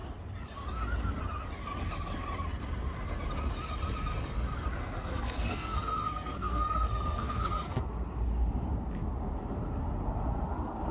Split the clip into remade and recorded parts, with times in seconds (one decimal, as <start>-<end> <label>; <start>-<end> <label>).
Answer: 0.0-4.7 recorded; 4.7-7.8 remade; 7.8-10.9 recorded